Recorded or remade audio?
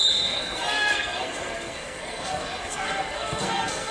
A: remade